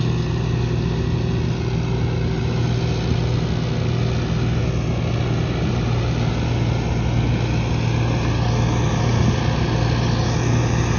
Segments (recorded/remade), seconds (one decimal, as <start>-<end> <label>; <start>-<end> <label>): 0.0-11.0 recorded